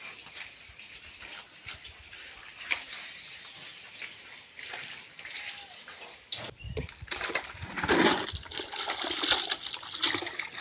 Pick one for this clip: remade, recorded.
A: recorded